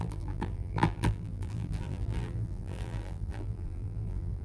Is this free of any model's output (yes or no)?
no